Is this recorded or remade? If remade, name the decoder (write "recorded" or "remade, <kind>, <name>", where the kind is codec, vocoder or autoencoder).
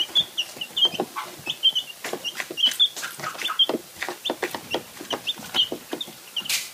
recorded